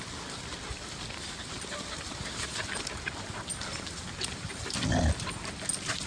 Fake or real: real